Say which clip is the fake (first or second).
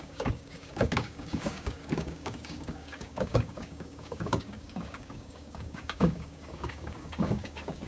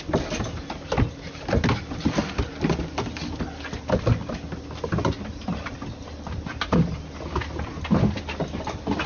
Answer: first